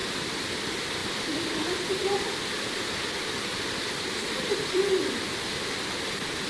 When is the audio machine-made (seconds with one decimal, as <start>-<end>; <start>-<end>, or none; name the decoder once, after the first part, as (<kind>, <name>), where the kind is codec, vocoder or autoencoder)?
0.0-0.6 (vocoder, BigVGAN v2); 1.0-4.8